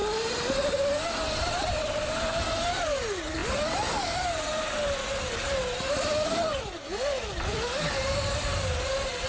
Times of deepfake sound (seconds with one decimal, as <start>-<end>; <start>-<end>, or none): none